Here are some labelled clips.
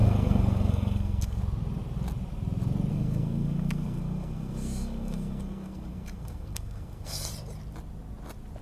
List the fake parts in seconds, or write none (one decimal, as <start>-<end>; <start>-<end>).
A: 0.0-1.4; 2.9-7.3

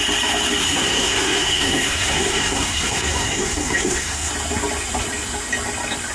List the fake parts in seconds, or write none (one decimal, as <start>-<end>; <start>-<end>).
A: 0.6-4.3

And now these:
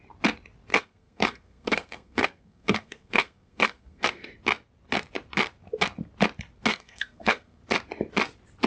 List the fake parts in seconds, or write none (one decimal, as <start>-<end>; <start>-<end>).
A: 0.7-4.3; 6.7-7.6

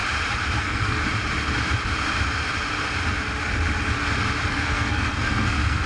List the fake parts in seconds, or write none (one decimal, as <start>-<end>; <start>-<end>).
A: 0.6-1.0; 4.5-5.9

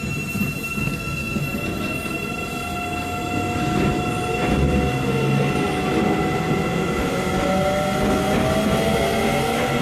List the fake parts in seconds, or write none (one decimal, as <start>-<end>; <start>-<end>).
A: 0.8-1.4

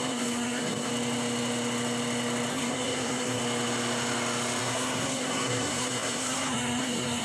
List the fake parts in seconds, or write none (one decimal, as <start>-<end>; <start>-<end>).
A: 0.0-0.9; 2.5-3.4; 4.6-7.2